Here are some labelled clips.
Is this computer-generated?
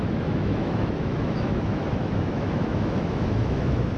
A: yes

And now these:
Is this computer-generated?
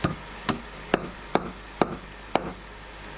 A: no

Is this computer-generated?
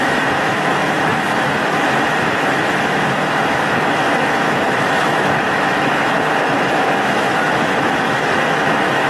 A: yes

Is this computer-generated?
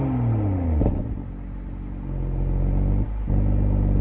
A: no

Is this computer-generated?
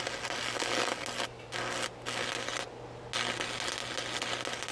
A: no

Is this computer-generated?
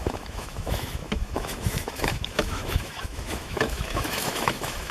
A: yes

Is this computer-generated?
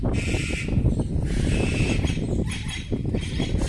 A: no